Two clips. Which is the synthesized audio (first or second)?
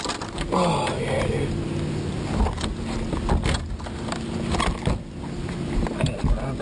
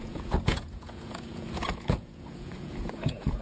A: second